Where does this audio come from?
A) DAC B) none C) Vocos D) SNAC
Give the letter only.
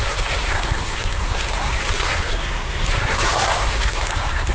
D